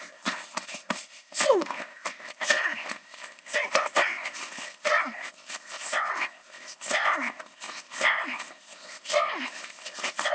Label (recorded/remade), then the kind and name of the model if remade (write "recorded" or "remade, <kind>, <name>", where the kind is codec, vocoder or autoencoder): remade, codec, ZipCodec